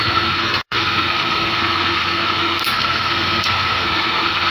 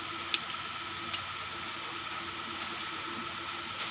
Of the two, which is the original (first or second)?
second